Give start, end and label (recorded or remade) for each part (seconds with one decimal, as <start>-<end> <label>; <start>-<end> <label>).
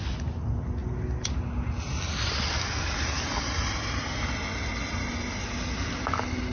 0.0-6.5 recorded